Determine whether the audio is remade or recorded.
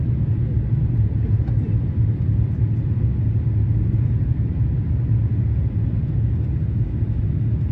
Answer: recorded